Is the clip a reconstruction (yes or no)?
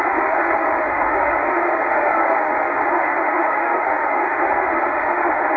yes